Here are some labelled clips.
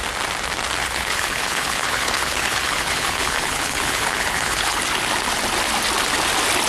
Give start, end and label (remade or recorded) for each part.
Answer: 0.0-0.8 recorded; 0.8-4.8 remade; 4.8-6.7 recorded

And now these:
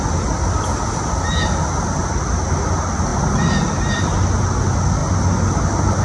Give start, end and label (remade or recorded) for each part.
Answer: 0.0-6.0 recorded